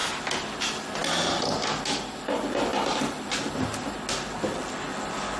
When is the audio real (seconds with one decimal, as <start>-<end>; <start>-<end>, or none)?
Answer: 0.0-5.4